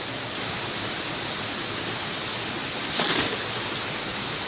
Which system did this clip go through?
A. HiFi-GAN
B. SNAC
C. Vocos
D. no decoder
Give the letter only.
D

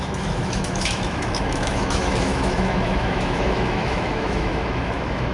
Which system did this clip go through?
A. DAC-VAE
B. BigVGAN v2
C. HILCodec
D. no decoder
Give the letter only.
A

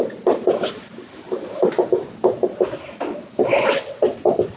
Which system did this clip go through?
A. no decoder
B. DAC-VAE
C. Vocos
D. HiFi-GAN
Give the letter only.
A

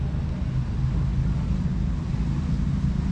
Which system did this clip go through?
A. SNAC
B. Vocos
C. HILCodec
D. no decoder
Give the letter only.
D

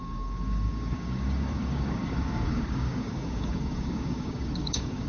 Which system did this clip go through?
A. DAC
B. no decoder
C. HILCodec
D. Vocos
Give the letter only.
A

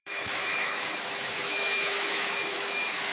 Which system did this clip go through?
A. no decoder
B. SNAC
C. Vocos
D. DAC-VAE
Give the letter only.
D